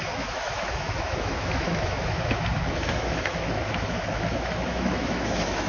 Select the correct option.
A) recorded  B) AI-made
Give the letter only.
B